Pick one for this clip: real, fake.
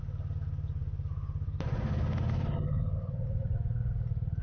real